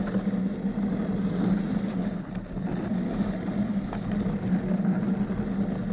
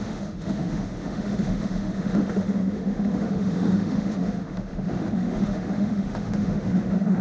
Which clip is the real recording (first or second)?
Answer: first